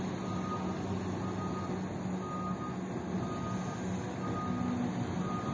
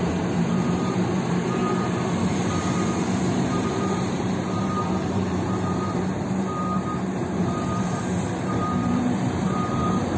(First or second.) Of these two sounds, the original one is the first